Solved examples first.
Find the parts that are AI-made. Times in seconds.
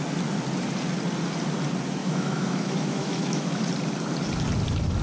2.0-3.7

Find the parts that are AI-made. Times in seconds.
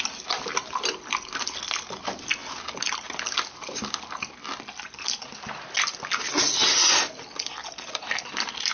none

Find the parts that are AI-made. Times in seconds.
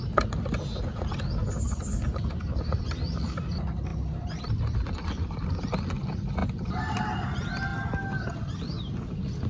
none